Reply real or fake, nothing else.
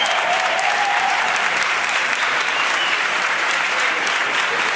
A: fake